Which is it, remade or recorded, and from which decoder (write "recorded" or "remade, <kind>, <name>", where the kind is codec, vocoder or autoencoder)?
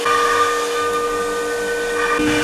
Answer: recorded